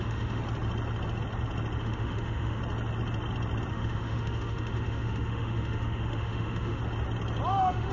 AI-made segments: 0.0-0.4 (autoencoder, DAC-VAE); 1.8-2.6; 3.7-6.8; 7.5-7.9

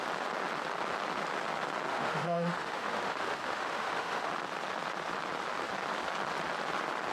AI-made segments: 1.9-4.3 (autoencoder, DAC-VAE)

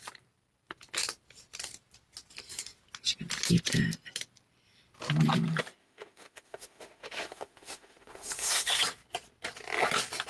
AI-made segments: 5.8-8.8 (autoencoder, DAC-VAE)

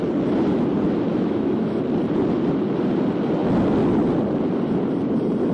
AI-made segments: 1.1-1.8 (autoencoder, DAC-VAE)